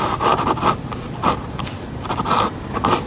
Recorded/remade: recorded